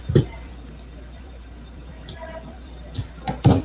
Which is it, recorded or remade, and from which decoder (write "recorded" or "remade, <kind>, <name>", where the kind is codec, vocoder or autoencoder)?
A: remade, vocoder, BigVGAN v2